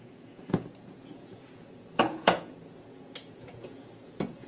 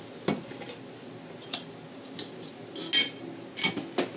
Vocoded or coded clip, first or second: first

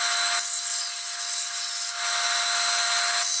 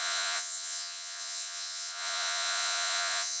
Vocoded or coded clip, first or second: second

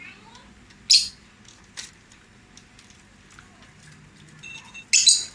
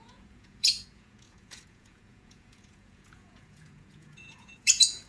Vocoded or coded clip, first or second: second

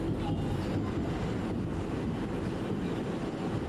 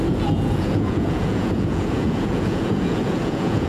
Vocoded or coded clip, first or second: second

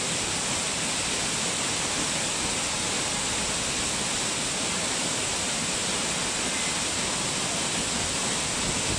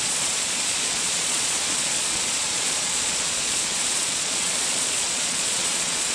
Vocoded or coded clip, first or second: second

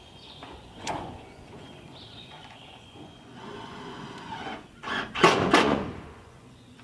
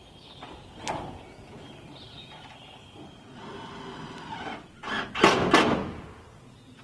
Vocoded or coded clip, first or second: first